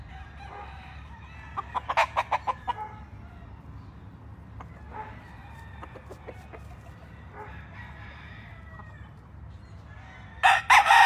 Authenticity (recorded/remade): recorded